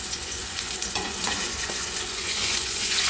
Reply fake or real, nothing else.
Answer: fake